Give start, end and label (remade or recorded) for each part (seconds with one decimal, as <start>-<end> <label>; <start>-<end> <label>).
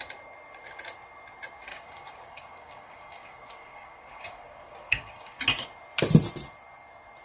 0.0-1.7 recorded; 1.7-5.4 remade; 5.4-7.2 recorded